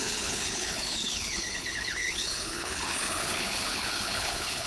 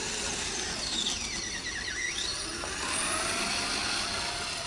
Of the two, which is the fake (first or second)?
first